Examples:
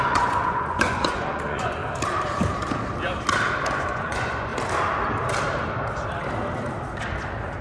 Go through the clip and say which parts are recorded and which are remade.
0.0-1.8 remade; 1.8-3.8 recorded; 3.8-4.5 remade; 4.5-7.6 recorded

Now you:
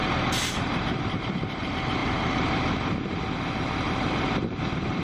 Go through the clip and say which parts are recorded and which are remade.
0.0-5.0 remade

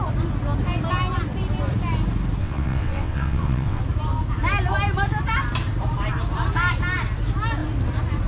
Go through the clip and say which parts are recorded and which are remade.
0.0-2.4 recorded; 2.4-3.8 remade; 3.8-8.3 recorded

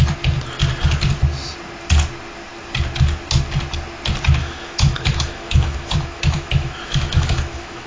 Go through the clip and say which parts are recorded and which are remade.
0.0-4.4 recorded; 4.4-7.9 remade